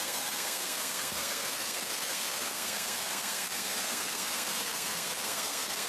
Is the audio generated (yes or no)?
yes